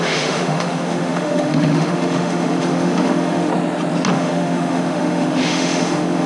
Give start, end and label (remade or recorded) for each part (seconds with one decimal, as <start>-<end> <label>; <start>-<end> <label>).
0.0-3.5 remade; 3.5-4.1 recorded; 4.1-6.3 remade